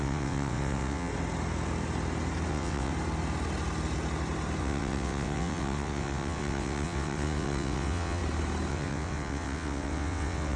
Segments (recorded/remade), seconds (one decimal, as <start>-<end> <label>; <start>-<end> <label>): 0.0-1.1 remade; 1.1-2.5 recorded; 2.5-2.9 remade; 2.9-4.6 recorded; 4.6-8.2 remade; 8.2-8.7 recorded; 8.7-10.6 remade